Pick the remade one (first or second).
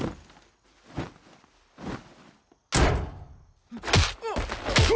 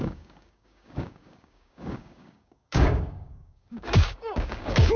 second